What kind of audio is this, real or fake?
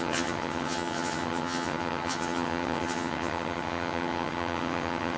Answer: fake